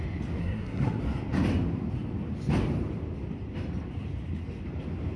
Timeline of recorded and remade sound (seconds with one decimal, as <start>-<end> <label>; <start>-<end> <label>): 0.0-0.4 recorded; 0.4-1.0 remade; 1.0-5.2 recorded